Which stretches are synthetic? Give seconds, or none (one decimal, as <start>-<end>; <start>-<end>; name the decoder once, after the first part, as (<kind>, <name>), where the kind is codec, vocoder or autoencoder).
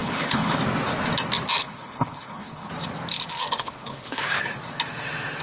0.0-0.6 (codec, HILCodec); 1.6-2.7; 3.6-4.4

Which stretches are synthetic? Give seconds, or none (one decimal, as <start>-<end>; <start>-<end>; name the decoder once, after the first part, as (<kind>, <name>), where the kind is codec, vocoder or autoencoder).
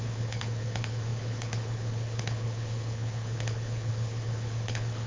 0.0-5.1 (codec, HILCodec)